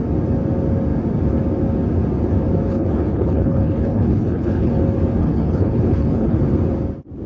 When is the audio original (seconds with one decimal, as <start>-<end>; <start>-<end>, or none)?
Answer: 0.0-2.7; 4.7-5.2; 6.4-7.3